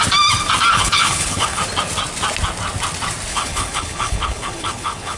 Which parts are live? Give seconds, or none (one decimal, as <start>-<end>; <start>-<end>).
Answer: 0.0-0.7; 1.6-3.3